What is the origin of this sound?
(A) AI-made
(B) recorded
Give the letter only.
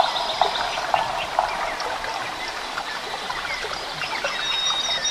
B